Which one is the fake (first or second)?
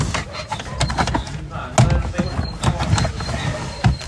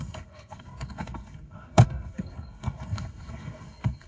second